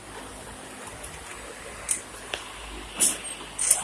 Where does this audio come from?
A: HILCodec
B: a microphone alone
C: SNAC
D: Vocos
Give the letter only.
B